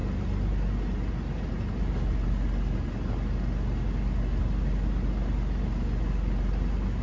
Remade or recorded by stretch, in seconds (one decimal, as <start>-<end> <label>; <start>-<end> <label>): 0.0-7.0 recorded